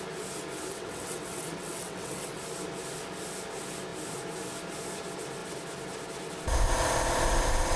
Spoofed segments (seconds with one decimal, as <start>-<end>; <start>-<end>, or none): 0.7-2.4